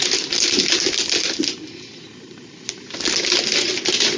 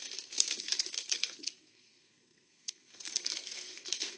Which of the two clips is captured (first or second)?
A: first